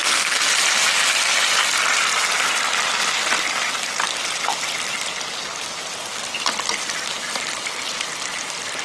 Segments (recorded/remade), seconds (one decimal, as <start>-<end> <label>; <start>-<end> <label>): 0.0-0.5 remade; 0.5-8.8 recorded